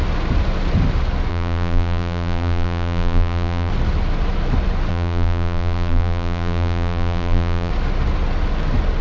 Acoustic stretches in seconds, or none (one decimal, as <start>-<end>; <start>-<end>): 0.0-1.3; 3.7-4.9; 7.7-9.0